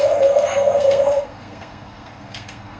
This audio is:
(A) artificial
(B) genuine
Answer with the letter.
A